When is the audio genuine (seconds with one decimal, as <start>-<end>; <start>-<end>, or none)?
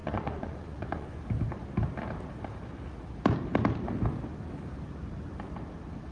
1.2-6.1